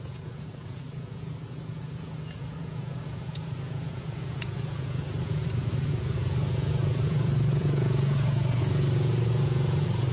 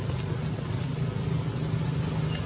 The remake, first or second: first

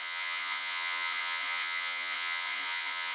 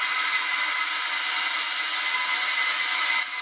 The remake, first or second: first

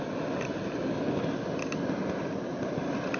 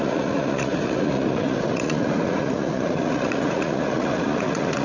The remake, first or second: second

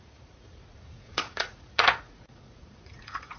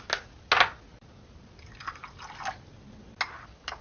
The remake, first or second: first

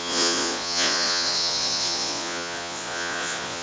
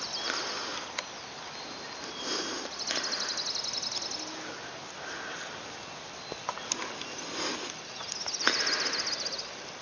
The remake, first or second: first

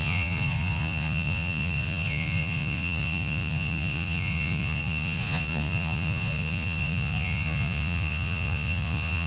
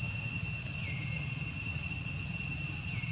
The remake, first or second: first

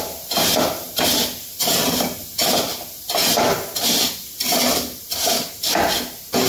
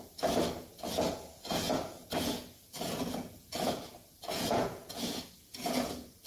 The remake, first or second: second